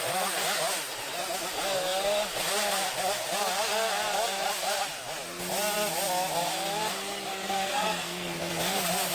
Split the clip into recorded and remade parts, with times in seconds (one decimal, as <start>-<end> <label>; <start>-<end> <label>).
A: 0.0-7.3 recorded; 7.3-8.4 remade; 8.4-9.1 recorded